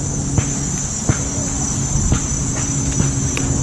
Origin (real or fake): real